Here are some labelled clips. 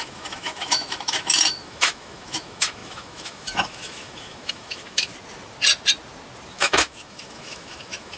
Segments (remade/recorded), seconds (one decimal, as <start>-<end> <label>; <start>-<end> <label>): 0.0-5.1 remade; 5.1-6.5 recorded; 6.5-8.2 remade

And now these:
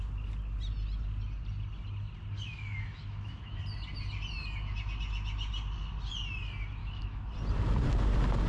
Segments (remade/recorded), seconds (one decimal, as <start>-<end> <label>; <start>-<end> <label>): 0.0-2.5 recorded; 2.5-3.6 remade; 3.6-6.8 recorded; 6.8-7.3 remade; 7.3-8.5 recorded

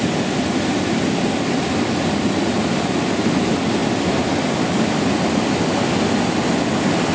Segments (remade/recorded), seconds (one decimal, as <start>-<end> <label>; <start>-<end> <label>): 0.0-7.1 recorded

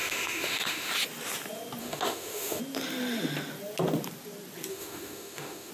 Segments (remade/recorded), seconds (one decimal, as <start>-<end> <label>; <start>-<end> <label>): 0.0-0.9 remade; 0.9-1.8 recorded; 1.8-2.6 remade; 2.6-4.7 recorded; 4.7-5.7 remade

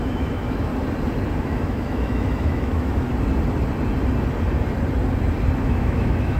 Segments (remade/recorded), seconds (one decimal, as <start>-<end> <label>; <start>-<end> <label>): 0.0-0.7 remade; 0.7-1.4 recorded; 1.4-3.1 remade; 3.1-5.6 recorded; 5.6-6.4 remade